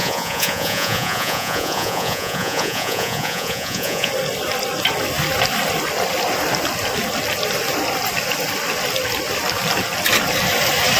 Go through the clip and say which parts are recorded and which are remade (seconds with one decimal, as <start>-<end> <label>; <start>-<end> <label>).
0.0-4.1 remade; 4.1-11.0 recorded